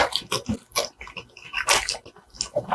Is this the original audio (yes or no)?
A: yes